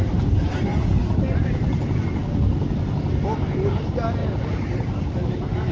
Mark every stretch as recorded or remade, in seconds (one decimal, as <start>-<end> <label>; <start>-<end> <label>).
0.0-1.0 recorded; 1.0-2.0 remade; 2.0-4.2 recorded; 4.2-5.7 remade